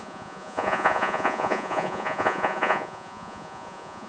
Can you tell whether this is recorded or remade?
remade